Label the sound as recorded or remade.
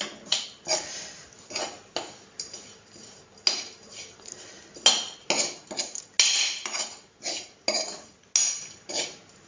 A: recorded